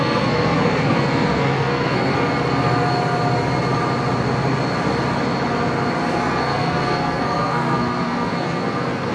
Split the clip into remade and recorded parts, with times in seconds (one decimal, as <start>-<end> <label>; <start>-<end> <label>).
0.0-2.1 remade; 2.1-6.2 recorded; 6.2-9.1 remade